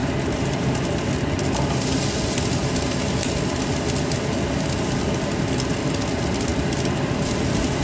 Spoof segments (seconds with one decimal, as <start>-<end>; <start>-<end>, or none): 0.0-1.1